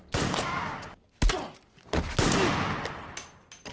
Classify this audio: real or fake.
real